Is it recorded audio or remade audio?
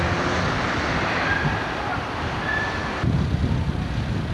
recorded